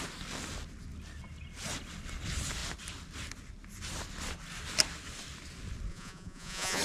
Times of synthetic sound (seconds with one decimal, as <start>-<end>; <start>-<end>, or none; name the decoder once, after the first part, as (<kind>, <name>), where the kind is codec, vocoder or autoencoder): 5.9-6.8 (vocoder, Vocos)